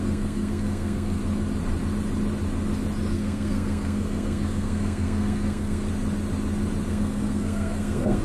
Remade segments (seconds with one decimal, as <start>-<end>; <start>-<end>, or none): 0.0-1.2; 3.1-5.9; 6.9-8.2